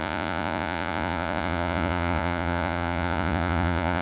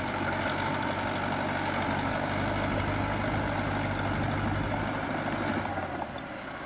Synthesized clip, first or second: first